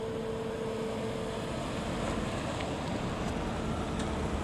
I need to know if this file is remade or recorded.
recorded